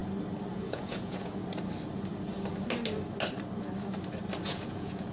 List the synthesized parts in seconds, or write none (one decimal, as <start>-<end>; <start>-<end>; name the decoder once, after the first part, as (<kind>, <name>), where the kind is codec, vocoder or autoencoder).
0.5-1.4 (vocoder, Vocos); 4.5-5.1